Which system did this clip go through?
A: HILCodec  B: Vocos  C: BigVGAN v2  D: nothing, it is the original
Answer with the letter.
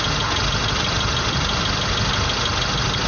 D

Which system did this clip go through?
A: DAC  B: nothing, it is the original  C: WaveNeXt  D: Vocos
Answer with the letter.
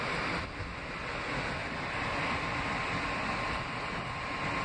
B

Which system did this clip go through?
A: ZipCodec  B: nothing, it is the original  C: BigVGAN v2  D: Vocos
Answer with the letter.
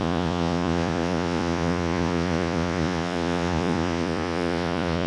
D